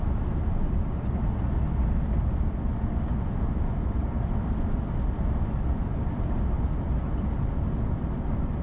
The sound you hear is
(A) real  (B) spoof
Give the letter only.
A